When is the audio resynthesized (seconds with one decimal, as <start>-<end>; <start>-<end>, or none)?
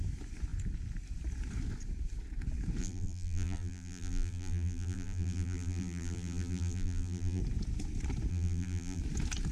2.8-7.4; 8.3-9.0